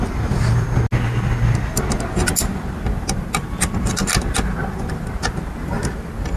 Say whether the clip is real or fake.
real